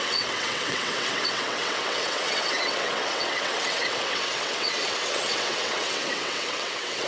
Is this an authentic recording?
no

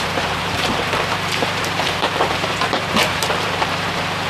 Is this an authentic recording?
no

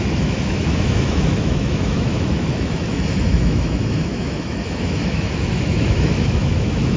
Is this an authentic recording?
no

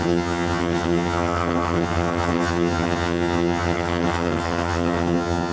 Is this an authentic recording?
no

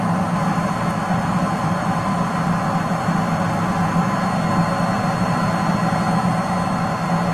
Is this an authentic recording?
yes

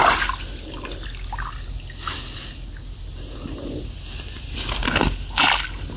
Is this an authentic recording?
yes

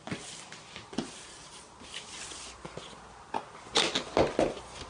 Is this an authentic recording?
yes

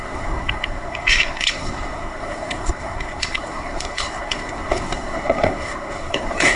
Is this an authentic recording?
no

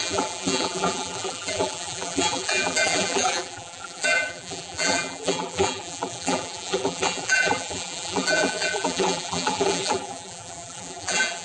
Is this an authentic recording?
no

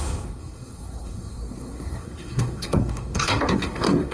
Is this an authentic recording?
no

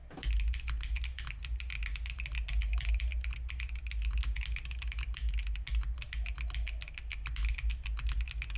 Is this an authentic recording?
yes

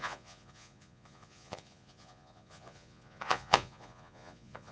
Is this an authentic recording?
no